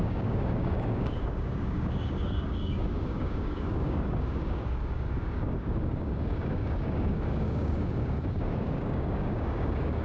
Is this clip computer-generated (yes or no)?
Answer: yes